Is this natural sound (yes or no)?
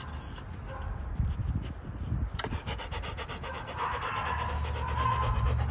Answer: yes